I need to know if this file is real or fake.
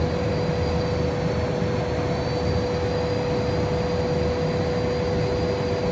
real